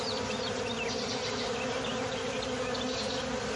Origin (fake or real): real